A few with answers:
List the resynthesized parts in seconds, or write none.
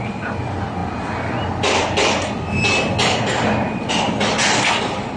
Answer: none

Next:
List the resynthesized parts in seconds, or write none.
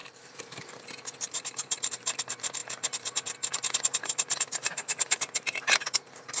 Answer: 0.0-6.4 (vocoder, BigVGAN v2)